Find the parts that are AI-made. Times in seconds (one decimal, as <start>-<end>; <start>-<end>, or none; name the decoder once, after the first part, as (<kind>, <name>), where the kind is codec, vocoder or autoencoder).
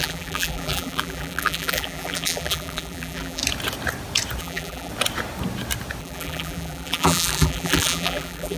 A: 0.0-3.4 (vocoder, BigVGAN v2); 4.4-4.9; 6.0-8.6